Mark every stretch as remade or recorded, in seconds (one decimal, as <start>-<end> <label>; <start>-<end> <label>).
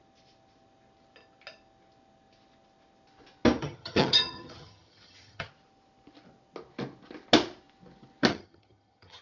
0.0-3.6 recorded; 3.6-5.5 remade; 5.5-8.3 recorded; 8.3-9.2 remade